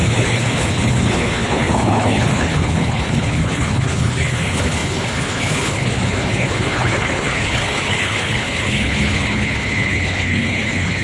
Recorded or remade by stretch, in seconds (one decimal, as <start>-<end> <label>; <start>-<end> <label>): 0.0-11.0 remade